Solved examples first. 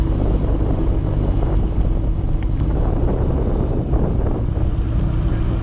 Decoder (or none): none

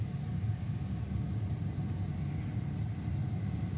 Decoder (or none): none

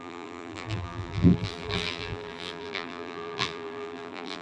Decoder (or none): vocoder, BigVGAN v2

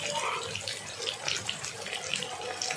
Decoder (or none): none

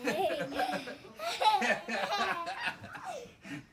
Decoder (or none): vocoder, BigVGAN v2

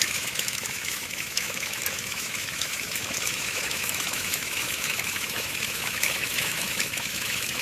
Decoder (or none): autoencoder, DAC-VAE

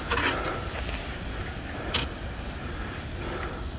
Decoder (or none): none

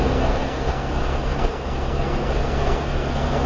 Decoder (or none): codec, SNAC